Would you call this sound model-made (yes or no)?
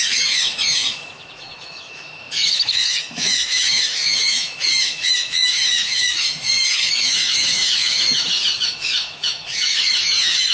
yes